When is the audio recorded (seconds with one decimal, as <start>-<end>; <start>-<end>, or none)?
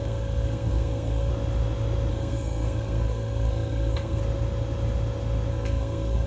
1.3-2.1; 4.2-5.5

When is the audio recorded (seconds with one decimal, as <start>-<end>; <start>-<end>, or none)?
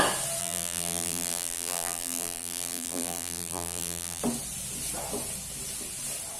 0.0-0.4; 4.2-6.4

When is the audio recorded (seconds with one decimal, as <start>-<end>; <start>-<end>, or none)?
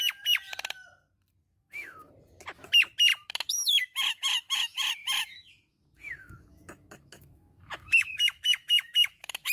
0.0-1.4; 2.1-3.1; 5.8-6.2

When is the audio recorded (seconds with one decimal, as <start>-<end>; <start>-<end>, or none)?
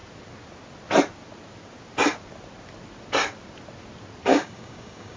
0.0-4.3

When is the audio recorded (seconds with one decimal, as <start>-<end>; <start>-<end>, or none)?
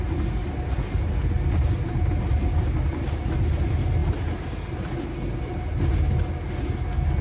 0.0-7.2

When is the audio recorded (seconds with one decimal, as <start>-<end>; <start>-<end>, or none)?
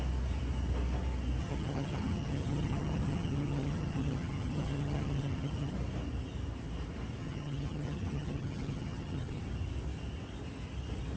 0.0-1.4; 5.7-7.2; 9.4-11.2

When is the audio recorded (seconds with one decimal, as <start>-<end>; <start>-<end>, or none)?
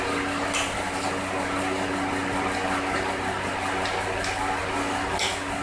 0.0-5.6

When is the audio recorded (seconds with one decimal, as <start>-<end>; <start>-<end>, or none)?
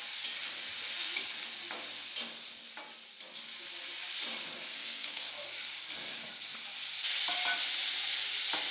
0.0-4.7; 5.3-8.7